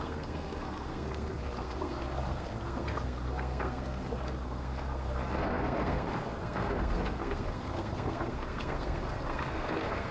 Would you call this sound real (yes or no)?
no